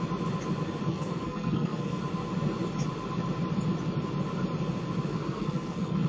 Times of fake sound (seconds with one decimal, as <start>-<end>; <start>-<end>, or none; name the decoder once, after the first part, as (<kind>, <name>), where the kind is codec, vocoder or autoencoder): 0.9-2.0 (codec, SNAC); 5.1-6.1